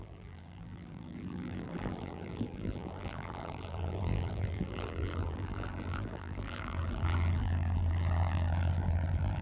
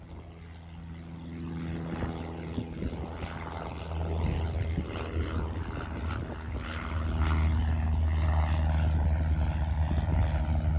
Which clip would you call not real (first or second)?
first